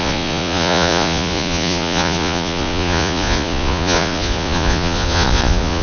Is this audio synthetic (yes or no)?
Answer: yes